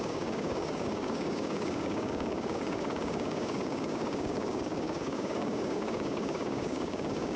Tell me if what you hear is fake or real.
fake